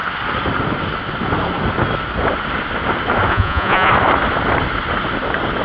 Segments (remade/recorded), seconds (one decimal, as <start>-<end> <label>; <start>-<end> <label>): 0.0-3.3 recorded; 3.3-3.9 remade; 3.9-5.6 recorded